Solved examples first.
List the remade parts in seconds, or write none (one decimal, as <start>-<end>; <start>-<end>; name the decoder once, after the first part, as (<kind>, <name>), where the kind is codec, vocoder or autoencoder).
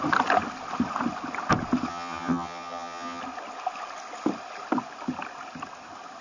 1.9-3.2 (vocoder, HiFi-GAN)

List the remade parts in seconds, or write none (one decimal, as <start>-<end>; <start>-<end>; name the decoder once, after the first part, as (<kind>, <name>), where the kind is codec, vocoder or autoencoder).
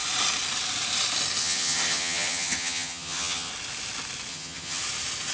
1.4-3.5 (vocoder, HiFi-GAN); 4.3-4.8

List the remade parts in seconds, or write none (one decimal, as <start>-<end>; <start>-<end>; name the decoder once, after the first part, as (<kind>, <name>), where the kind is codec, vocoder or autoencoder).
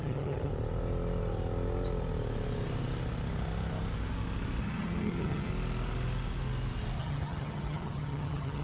0.0-0.5 (vocoder, HiFi-GAN); 4.6-5.5; 7.0-8.6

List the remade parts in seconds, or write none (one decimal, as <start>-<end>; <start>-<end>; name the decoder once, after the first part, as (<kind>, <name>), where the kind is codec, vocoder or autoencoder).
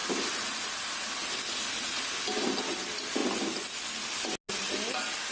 none